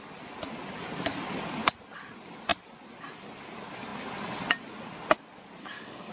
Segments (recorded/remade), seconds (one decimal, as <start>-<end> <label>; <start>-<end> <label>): 0.0-5.6 recorded; 5.6-6.1 remade